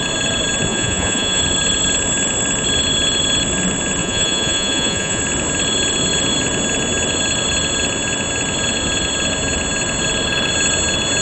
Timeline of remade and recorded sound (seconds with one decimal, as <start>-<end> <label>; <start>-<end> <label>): 0.0-0.7 recorded; 0.7-1.4 remade; 1.4-4.0 recorded; 4.0-5.2 remade; 5.2-11.2 recorded